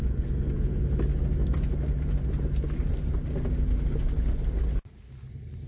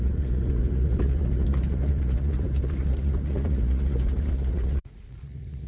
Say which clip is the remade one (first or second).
second